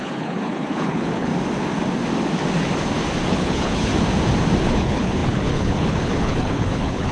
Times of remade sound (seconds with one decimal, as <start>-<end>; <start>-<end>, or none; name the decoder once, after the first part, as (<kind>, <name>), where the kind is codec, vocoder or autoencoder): 0.0-1.3 (codec, HILCodec); 3.3-3.9; 4.6-7.1